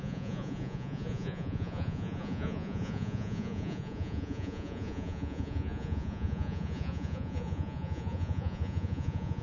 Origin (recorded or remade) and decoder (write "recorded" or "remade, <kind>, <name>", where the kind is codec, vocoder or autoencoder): remade, vocoder, Vocos